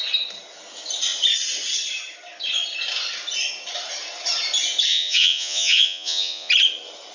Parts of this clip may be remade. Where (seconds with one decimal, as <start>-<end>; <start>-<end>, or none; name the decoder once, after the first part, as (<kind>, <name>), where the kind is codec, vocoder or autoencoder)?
4.9-6.5 (vocoder, Vocos)